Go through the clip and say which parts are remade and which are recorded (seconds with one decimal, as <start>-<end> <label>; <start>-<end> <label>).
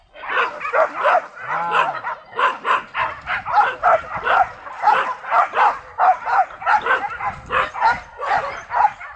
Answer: 0.0-9.2 recorded